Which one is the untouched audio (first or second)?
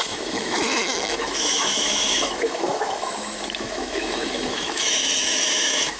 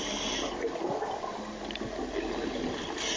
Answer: second